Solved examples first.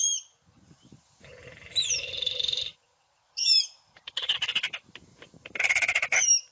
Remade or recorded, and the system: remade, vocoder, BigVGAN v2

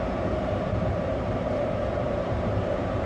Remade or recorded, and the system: remade, vocoder, BigVGAN v2